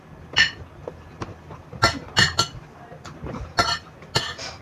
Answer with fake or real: real